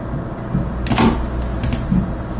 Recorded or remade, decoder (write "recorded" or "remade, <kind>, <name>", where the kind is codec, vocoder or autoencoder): recorded